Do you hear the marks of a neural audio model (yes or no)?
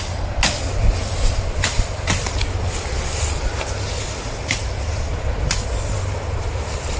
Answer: no